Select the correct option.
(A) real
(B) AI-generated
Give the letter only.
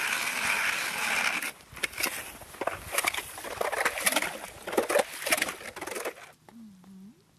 A